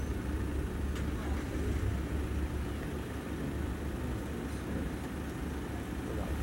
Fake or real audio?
real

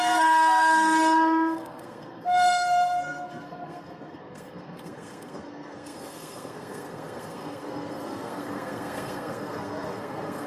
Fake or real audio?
fake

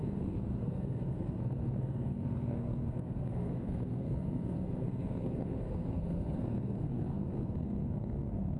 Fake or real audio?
fake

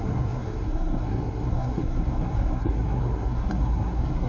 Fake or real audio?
fake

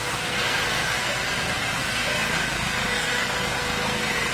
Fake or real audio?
fake